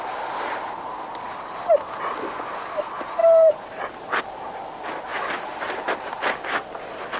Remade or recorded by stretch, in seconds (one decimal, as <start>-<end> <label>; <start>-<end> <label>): 0.0-3.2 recorded; 3.2-4.2 remade; 4.2-5.1 recorded; 5.1-6.1 remade; 6.1-7.2 recorded